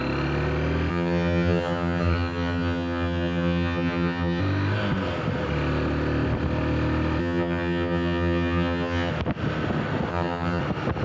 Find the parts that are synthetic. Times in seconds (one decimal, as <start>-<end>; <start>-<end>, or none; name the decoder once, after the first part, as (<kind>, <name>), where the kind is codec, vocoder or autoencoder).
0.9-4.4 (vocoder, HiFi-GAN); 7.2-9.1; 10.1-10.6